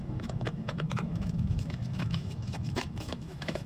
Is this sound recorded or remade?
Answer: remade